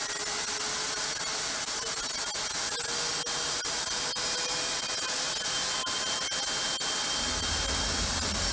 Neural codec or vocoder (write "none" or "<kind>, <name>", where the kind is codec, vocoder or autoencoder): none